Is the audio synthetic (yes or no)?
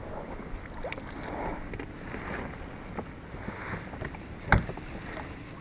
no